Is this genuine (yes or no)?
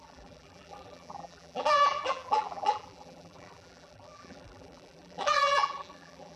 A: no